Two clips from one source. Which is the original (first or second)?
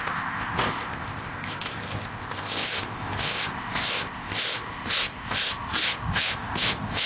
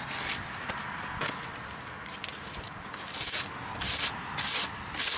second